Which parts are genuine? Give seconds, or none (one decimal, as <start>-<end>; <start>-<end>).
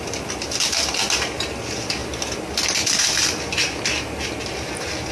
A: 0.0-5.1